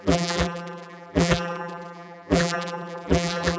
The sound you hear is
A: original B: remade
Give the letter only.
B